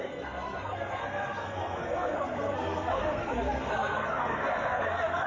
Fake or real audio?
fake